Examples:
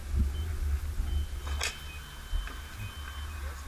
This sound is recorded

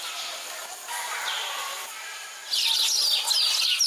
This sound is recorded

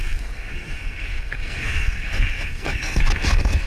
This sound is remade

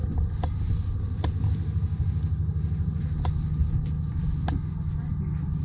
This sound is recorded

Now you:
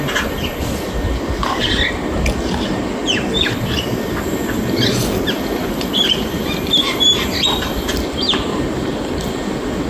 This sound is recorded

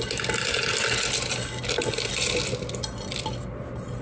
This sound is recorded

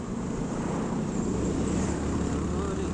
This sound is recorded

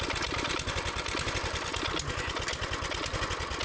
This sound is recorded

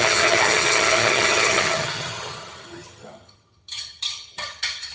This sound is remade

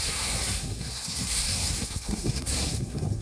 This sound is remade